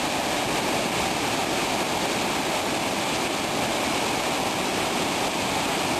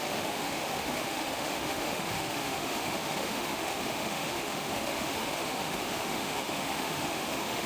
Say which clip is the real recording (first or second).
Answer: first